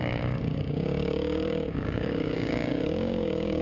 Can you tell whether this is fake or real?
fake